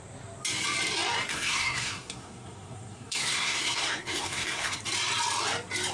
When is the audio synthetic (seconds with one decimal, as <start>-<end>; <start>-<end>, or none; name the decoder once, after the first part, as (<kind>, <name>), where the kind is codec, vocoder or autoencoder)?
1.3-4.8 (codec, SNAC)